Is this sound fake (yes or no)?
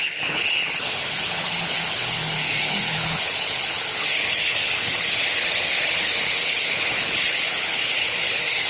yes